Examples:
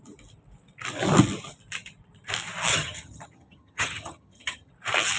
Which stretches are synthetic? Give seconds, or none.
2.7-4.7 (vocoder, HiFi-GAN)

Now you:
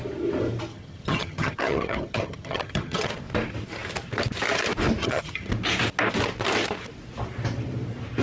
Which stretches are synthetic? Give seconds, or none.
0.7-3.1 (vocoder, HiFi-GAN); 5.0-5.5

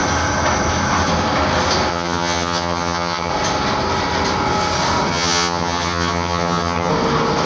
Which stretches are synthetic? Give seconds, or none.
1.9-3.3 (vocoder, HiFi-GAN); 5.1-6.9

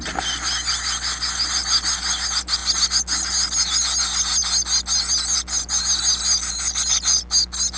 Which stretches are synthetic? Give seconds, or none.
none

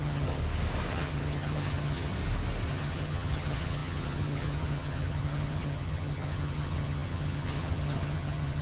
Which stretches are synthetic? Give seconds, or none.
0.0-0.4 (vocoder, HiFi-GAN); 0.9-2.1; 2.7-8.6

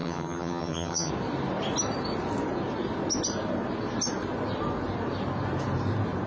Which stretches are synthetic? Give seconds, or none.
0.0-1.1 (vocoder, HiFi-GAN)

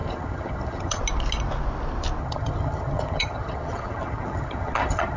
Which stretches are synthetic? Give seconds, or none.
0.0-1.0 (vocoder, HiFi-GAN); 2.2-5.2

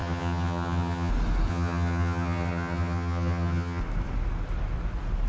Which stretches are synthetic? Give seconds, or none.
0.0-1.1 (vocoder, HiFi-GAN); 1.5-3.8